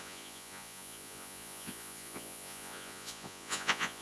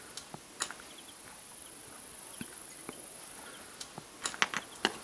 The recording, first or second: second